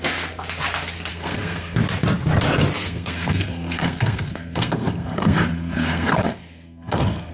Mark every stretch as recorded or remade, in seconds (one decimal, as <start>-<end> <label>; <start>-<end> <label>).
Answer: 0.0-1.1 recorded; 1.1-1.8 remade; 1.8-2.8 recorded; 2.8-7.3 remade